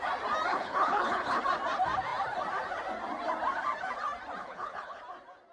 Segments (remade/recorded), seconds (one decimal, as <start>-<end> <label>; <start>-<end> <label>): 0.0-0.5 recorded; 0.5-1.4 remade; 1.4-4.4 recorded; 4.4-5.0 remade; 5.0-5.5 recorded